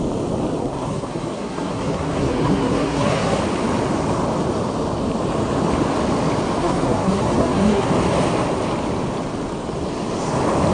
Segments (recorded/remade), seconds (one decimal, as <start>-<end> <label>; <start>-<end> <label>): 0.0-0.6 recorded; 0.6-3.4 remade; 3.4-6.6 recorded; 6.6-7.9 remade; 7.9-10.7 recorded